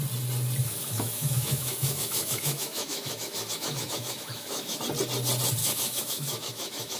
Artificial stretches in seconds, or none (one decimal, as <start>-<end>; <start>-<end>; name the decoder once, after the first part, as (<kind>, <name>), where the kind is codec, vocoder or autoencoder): 0.6-4.8 (autoencoder, DAC-VAE); 5.6-7.0